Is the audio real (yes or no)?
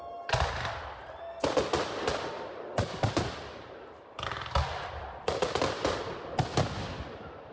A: yes